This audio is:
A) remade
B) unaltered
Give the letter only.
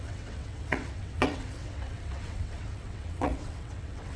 A